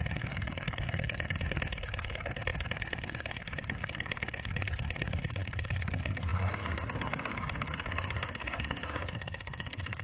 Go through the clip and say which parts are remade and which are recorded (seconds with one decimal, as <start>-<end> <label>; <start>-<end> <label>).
0.0-10.0 remade